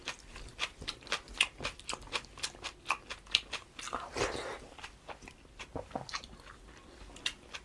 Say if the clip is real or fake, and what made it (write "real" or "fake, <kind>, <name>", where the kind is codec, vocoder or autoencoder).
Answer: real